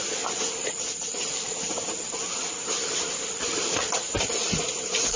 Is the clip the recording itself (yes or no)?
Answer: yes